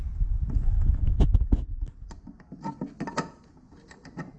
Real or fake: real